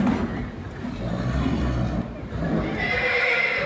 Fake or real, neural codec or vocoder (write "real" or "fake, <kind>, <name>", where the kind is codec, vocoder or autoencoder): real